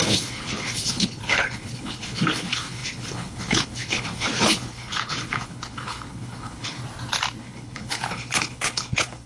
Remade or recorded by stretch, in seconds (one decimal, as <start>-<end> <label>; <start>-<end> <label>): 0.0-6.8 remade; 6.8-7.4 recorded; 7.4-9.3 remade